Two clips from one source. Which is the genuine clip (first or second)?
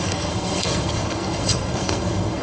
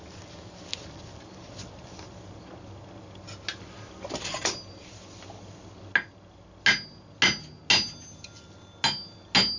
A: second